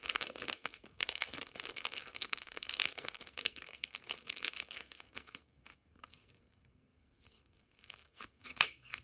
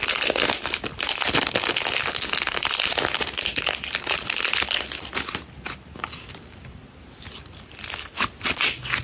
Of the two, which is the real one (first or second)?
second